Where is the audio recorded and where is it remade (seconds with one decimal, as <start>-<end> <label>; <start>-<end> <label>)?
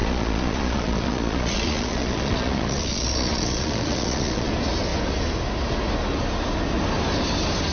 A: 0.0-4.5 remade; 4.5-7.7 recorded